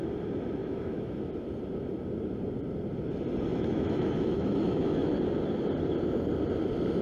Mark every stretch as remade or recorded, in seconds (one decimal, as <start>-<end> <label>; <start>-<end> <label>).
0.0-0.6 recorded; 0.6-1.2 remade; 1.2-3.5 recorded; 3.5-5.1 remade; 5.1-7.0 recorded